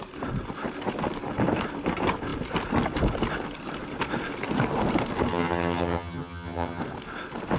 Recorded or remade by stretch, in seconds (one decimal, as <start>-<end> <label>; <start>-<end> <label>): 0.0-5.3 recorded; 5.3-6.8 remade; 6.8-7.6 recorded